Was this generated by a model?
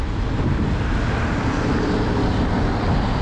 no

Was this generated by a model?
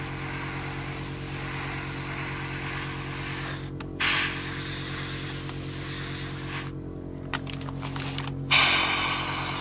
no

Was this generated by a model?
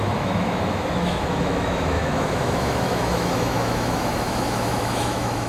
yes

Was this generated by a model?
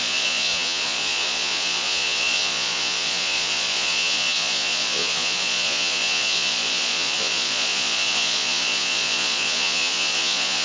yes